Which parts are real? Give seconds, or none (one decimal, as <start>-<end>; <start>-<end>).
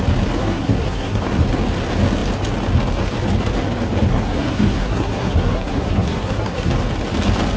0.0-0.4; 1.2-4.1; 6.7-7.6